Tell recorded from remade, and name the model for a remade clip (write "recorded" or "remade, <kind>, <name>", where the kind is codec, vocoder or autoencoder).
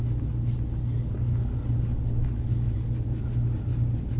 recorded